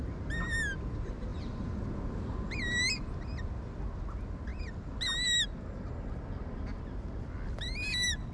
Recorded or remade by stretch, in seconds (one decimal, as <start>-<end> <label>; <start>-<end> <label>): 0.0-8.3 recorded